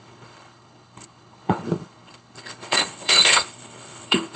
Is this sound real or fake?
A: fake